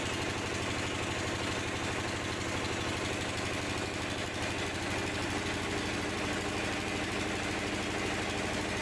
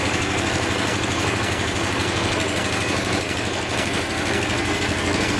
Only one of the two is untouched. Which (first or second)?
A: first